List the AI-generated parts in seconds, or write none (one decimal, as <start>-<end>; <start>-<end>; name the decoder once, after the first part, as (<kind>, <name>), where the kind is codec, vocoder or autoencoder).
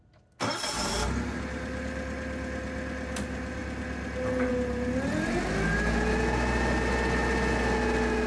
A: none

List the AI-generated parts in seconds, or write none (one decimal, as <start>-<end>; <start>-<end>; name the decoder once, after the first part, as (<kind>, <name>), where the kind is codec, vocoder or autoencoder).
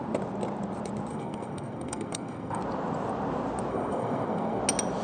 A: 1.1-2.6 (codec, SNAC); 3.7-4.6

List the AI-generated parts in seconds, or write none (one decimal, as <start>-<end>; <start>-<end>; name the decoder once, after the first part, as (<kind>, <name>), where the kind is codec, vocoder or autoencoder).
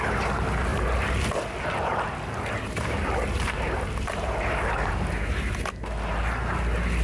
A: none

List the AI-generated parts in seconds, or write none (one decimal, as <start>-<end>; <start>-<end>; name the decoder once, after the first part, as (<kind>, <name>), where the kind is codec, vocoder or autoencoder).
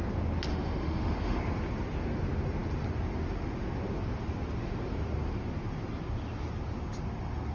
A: 0.5-1.4 (autoencoder, DAC-VAE)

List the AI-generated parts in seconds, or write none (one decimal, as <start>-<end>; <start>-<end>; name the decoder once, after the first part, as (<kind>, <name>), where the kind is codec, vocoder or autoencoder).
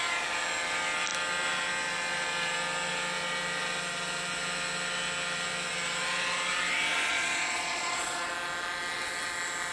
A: 7.1-8.3 (vocoder, Vocos)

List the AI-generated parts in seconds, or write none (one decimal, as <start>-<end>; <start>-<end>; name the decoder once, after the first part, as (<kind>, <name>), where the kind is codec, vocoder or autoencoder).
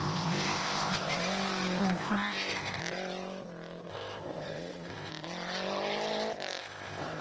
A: 0.0-1.1 (codec, ZipCodec); 1.8-2.8; 3.9-5.1; 6.6-7.2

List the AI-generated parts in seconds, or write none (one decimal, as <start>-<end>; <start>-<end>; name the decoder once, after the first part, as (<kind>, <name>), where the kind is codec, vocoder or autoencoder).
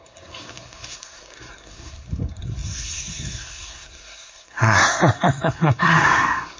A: 0.0-6.6 (codec, SNAC)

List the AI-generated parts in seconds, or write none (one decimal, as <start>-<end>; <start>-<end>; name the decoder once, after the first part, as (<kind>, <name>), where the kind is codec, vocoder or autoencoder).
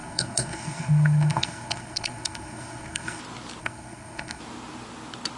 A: 0.0-3.2 (codec, SNAC); 3.6-4.4